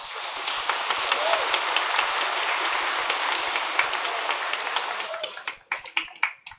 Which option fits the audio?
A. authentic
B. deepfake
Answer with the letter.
B